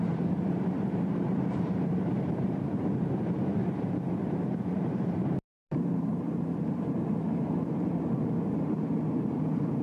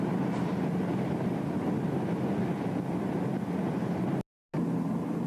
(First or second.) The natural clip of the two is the second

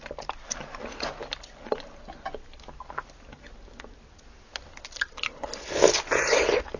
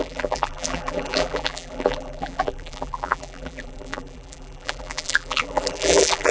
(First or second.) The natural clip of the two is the first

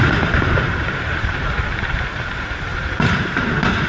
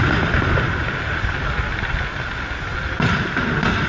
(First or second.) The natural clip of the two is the second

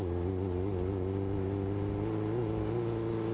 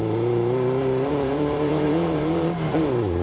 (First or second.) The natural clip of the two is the first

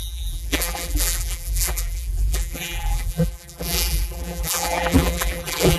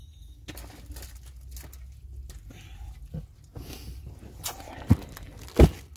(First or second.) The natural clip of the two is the second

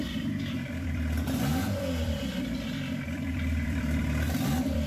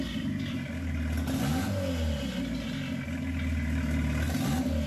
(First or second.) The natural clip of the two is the second